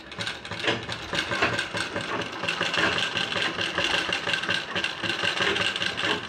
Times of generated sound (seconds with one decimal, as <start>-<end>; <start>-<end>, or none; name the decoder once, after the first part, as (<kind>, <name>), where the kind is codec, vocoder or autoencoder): none